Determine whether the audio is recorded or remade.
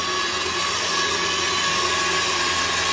recorded